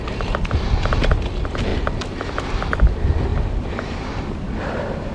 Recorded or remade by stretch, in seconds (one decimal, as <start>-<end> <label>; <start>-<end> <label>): 0.0-1.7 remade; 1.7-2.7 recorded; 2.7-5.1 remade

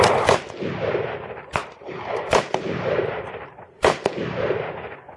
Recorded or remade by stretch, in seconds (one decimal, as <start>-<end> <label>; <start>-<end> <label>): 0.0-1.6 recorded; 1.6-4.7 remade; 4.7-5.2 recorded